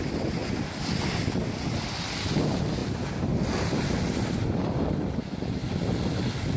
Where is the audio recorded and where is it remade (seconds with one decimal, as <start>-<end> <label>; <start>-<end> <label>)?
0.0-6.6 recorded